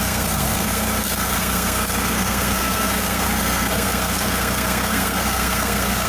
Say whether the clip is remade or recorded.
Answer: remade